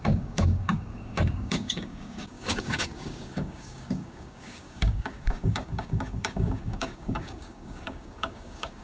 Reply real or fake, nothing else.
fake